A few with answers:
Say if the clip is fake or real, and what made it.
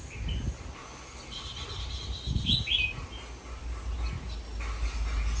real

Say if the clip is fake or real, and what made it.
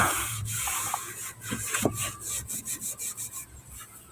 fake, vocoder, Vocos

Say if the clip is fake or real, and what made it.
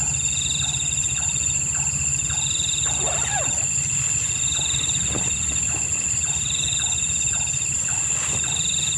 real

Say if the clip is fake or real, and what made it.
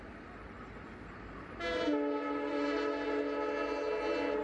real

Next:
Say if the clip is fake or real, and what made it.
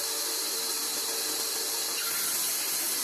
real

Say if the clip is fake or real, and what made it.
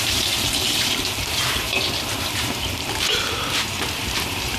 fake, vocoder, BigVGAN v2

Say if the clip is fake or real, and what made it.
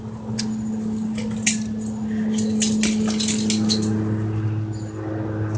real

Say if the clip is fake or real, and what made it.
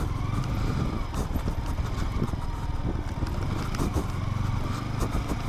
real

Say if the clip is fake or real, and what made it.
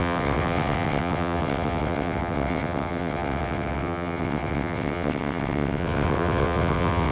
fake, vocoder, WaveNeXt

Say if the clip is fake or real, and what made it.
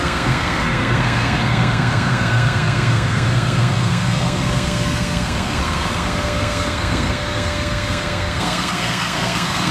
fake, codec, SNAC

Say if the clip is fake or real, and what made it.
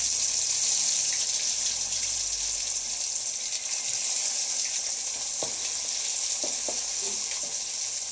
real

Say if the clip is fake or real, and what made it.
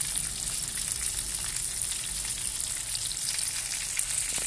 real